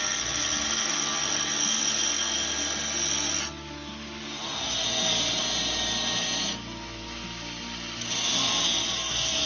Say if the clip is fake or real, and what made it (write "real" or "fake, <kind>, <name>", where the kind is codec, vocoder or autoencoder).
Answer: real